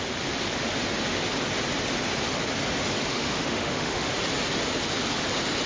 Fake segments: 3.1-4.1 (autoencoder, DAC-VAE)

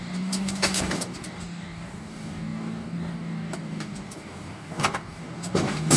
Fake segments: 0.0-6.0 (codec, DAC)

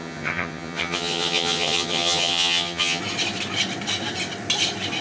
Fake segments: 0.0-3.0 (vocoder, HiFi-GAN)